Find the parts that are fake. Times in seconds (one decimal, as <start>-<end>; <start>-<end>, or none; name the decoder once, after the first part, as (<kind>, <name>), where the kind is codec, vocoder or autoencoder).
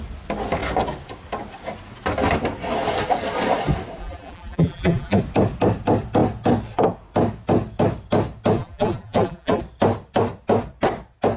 4.0-5.2 (vocoder, BigVGAN v2); 8.6-9.6